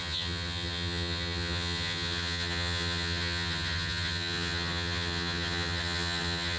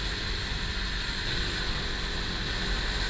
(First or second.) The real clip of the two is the second